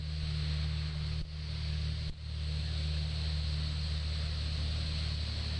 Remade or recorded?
recorded